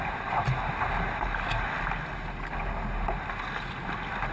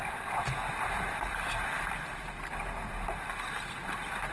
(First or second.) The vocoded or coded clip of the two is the second